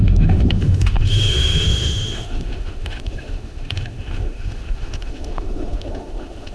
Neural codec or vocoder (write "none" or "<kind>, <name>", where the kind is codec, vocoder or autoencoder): autoencoder, DAC-VAE